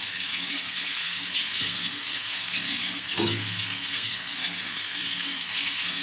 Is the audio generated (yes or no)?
yes